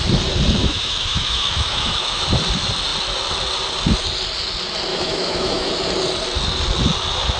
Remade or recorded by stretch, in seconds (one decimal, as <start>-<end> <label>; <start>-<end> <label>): 0.0-0.6 recorded; 0.6-2.2 remade; 2.2-4.9 recorded; 4.9-5.7 remade; 5.7-7.4 recorded